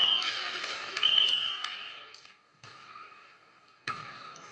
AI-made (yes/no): yes